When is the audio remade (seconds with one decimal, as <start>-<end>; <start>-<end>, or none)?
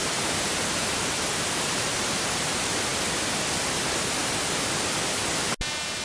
0.0-2.3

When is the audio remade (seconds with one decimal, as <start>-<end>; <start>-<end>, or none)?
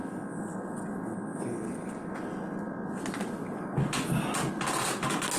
0.0-0.8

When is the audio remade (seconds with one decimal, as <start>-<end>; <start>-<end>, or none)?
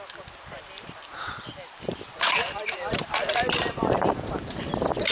1.9-4.1